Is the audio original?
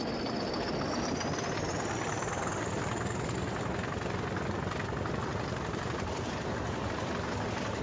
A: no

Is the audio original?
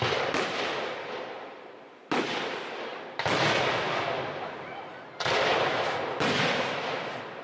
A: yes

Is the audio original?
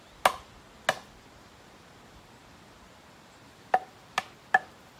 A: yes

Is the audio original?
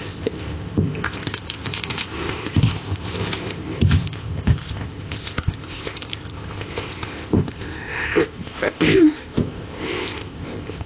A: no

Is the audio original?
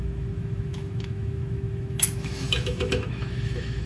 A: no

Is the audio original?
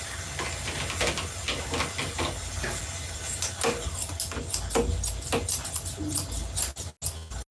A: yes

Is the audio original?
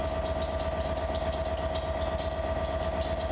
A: yes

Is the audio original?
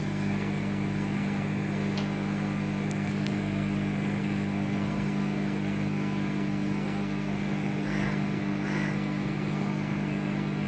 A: no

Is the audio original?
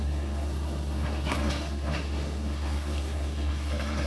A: no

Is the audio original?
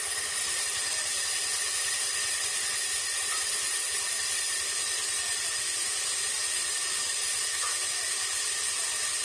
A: yes